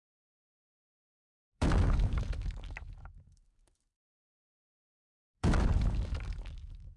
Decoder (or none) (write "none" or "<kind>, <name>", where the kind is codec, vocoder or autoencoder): codec, DAC